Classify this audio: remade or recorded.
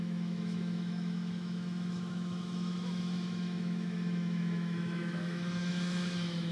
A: remade